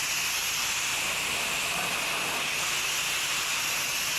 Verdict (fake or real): real